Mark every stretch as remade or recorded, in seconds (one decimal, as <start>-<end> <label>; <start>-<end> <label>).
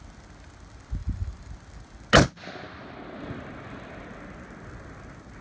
0.0-1.0 recorded; 1.0-1.5 remade; 1.5-5.4 recorded